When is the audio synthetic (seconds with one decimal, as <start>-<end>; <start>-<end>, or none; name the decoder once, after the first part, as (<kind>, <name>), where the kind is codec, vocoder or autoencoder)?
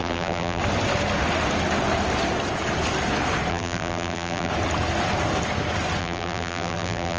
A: 0.0-0.6 (vocoder, BigVGAN v2); 3.5-4.5; 6.0-7.2